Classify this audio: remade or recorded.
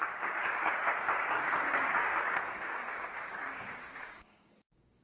remade